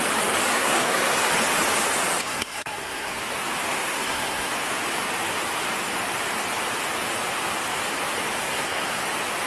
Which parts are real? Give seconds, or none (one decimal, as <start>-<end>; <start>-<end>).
0.0-0.5; 1.3-2.2; 3.2-3.7; 4.5-8.4; 9.0-9.5